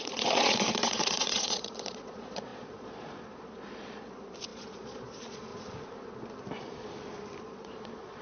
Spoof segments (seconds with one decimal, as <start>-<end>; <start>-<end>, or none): 0.0-5.5; 7.4-8.2